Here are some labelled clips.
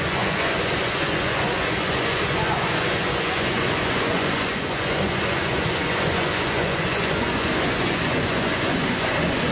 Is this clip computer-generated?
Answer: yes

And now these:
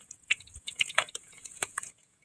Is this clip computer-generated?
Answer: yes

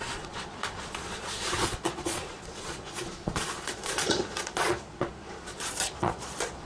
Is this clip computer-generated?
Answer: yes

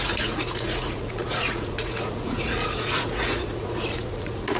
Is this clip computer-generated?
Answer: yes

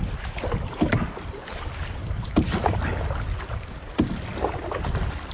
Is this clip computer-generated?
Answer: no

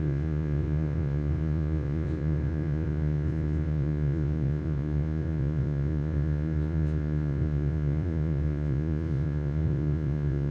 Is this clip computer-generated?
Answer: yes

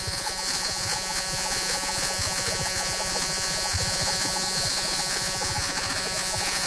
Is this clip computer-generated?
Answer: yes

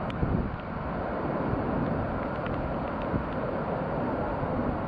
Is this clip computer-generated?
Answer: no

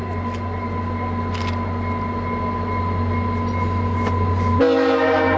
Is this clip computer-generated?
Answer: no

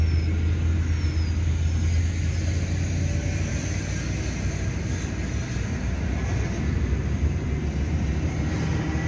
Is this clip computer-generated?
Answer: no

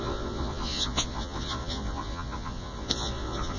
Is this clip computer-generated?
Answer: yes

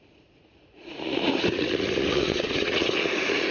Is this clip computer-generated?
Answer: yes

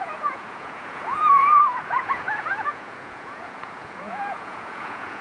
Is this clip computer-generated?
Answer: yes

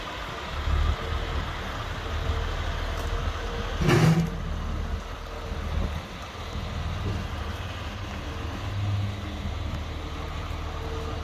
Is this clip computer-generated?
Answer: no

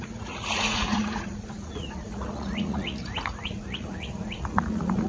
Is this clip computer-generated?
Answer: yes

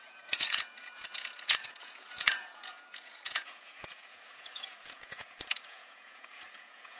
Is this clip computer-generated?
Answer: yes